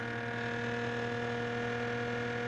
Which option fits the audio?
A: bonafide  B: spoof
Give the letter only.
A